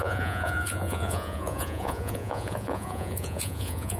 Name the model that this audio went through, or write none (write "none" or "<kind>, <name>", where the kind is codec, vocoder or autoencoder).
vocoder, Vocos